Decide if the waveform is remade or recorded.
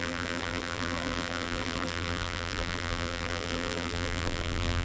remade